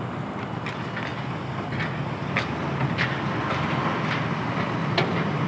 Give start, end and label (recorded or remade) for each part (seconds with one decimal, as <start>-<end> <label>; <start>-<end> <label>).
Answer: 0.0-5.5 recorded